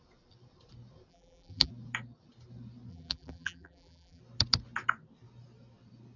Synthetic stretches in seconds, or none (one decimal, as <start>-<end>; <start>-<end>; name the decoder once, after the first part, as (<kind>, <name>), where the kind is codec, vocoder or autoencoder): 1.1-1.7 (vocoder, BigVGAN v2); 2.9-4.2